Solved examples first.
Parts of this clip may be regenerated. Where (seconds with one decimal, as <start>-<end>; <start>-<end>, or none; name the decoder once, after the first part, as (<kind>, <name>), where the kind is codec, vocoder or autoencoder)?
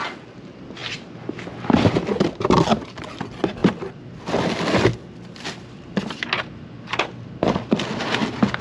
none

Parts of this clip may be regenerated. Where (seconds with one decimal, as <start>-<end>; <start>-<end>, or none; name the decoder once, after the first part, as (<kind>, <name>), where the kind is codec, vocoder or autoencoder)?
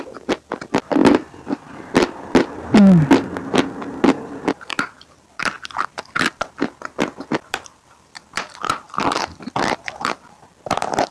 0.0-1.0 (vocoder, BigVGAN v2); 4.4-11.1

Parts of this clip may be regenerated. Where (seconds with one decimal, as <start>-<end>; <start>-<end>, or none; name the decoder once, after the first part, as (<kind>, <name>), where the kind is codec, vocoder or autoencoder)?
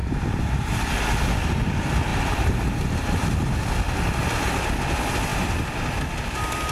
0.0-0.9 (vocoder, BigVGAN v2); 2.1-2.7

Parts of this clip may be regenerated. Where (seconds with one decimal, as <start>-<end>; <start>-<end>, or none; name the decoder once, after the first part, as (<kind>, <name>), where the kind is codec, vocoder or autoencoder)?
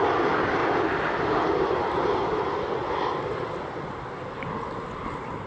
0.6-3.9 (vocoder, BigVGAN v2)